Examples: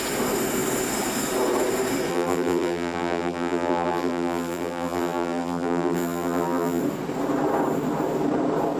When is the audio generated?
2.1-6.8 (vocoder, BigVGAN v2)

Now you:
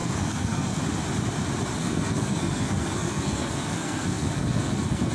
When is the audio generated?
0.0-0.8 (codec, SNAC); 1.8-5.1

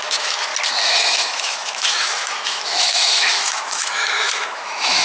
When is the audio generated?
0.0-0.5 (autoencoder, DAC-VAE); 1.0-5.0

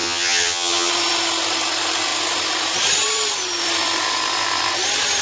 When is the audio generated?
0.0-0.9 (vocoder, HiFi-GAN)

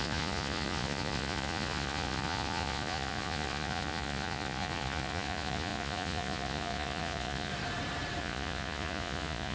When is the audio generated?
0.0-7.5 (vocoder, Vocos); 8.2-9.5

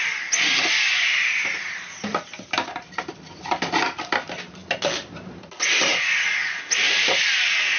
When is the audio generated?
none

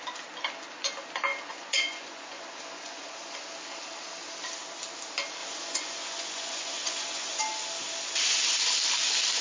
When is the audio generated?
1.3-3.4 (vocoder, Vocos); 5.4-7.4

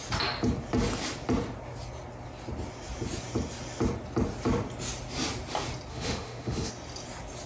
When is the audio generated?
5.9-6.7 (autoencoder, DAC-VAE)